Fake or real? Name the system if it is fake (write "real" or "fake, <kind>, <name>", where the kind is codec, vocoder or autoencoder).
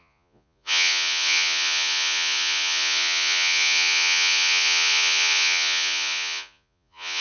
fake, vocoder, Vocos